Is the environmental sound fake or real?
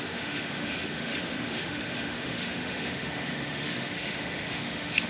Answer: fake